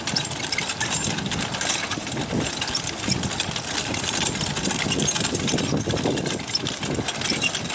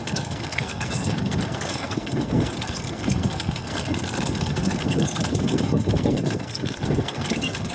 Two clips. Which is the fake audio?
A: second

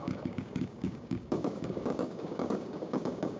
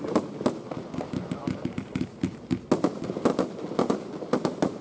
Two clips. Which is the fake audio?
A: first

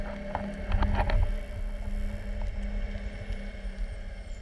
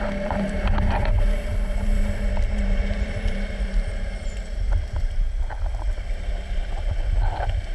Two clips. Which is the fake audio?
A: second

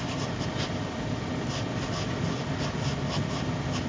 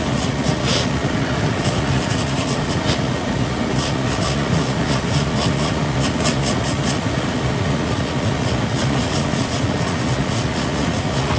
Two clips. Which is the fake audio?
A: second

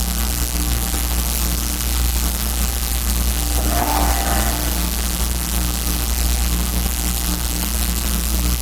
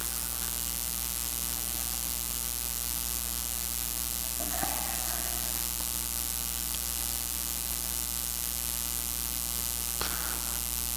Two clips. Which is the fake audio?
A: first